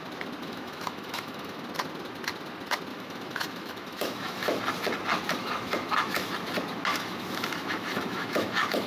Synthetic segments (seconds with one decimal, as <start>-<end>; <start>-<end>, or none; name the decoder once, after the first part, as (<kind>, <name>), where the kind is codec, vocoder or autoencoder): 0.4-1.6 (autoencoder, DAC-VAE); 2.9-4.6; 5.4-6.3; 6.9-8.9